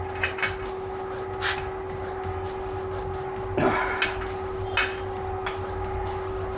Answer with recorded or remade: recorded